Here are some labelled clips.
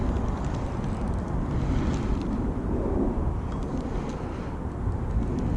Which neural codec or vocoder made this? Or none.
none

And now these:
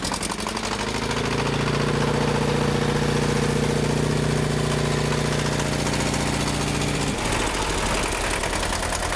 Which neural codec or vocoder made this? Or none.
none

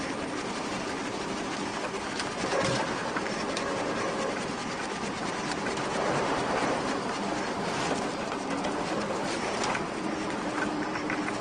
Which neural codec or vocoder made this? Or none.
none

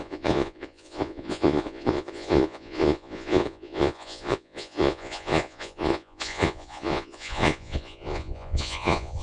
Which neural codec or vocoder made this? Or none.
vocoder, Vocos